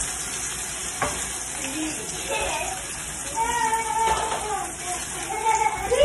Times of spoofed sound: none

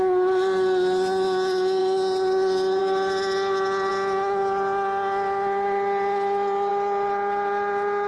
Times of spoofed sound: none